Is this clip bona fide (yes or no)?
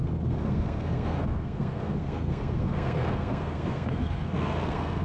no